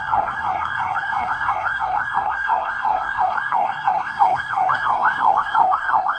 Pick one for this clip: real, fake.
fake